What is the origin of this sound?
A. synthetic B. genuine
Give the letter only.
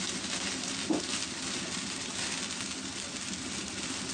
B